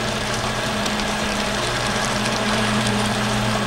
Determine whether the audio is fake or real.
fake